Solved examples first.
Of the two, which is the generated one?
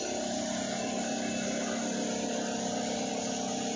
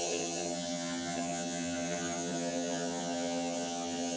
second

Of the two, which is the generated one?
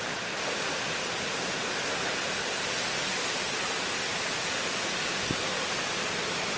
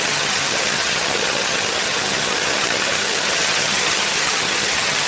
second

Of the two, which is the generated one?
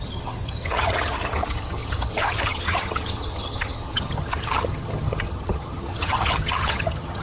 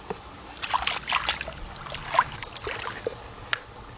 first